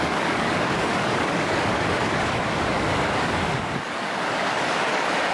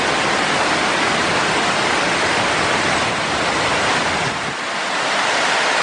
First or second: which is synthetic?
first